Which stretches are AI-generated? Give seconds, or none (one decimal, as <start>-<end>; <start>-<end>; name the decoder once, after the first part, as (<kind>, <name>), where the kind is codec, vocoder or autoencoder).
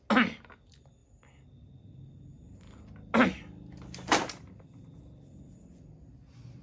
none